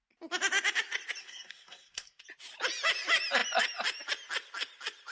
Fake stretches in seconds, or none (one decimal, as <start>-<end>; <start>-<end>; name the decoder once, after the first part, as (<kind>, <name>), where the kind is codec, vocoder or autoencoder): 1.2-2.2 (codec, SNAC)